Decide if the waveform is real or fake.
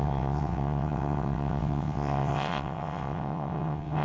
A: fake